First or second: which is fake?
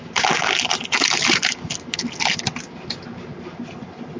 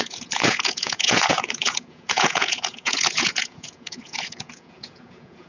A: second